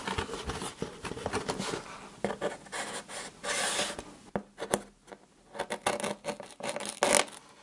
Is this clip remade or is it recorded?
recorded